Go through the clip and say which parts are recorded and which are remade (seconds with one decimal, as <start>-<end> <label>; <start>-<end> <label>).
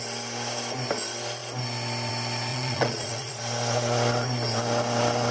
0.0-2.5 recorded; 2.5-3.4 remade; 3.4-5.3 recorded